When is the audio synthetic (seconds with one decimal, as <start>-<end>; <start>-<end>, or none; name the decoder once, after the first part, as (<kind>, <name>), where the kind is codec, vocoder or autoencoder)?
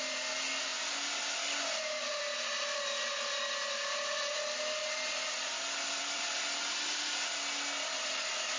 none